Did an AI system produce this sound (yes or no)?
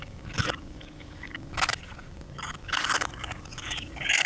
yes